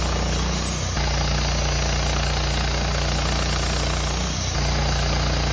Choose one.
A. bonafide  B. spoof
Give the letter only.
A